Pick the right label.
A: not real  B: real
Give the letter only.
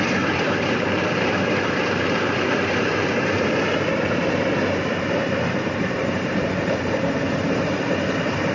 A